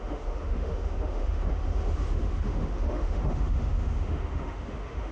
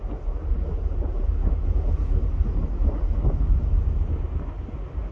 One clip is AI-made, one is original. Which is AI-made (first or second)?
first